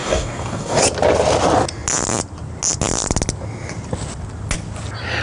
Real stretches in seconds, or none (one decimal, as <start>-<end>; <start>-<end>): 0.8-5.2